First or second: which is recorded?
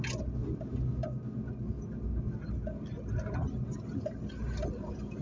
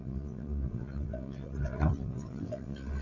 first